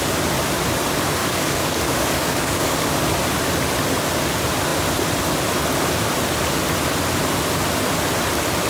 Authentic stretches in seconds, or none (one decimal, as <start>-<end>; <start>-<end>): 0.0-1.2; 2.9-8.7